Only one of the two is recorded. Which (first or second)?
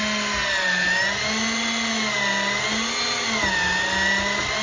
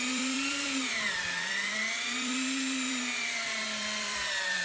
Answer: first